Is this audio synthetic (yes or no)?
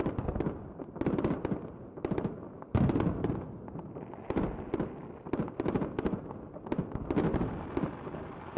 no